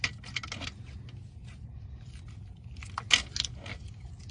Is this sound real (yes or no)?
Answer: yes